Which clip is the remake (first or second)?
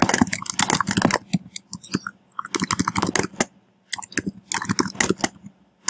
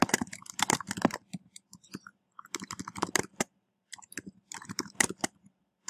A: second